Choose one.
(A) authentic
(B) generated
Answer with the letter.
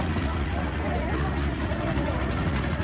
B